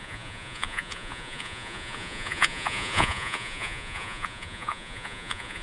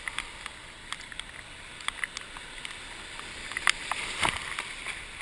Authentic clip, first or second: second